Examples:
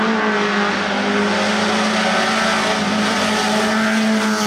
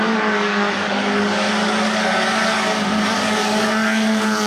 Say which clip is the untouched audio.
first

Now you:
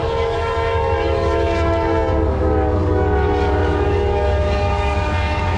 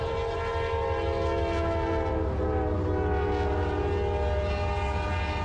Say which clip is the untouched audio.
second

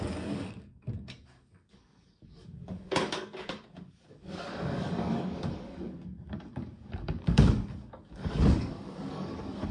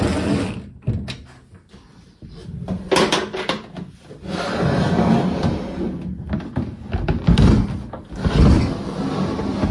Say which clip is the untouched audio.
second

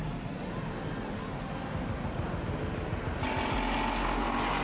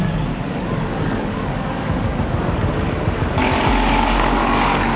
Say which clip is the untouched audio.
first